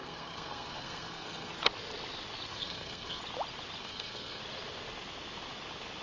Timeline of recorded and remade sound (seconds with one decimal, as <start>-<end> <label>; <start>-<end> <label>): 0.0-1.5 remade; 1.5-2.5 recorded; 2.5-3.2 remade; 3.2-3.8 recorded; 3.8-4.4 remade; 4.4-6.0 recorded